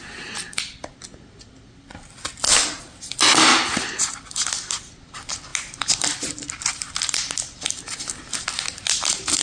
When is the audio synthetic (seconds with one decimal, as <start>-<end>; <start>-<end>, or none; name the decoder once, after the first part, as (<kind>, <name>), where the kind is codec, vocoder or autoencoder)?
none